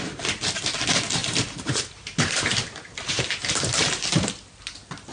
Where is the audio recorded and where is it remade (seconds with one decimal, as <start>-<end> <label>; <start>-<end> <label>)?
0.0-1.2 recorded; 1.2-4.3 remade; 4.3-5.1 recorded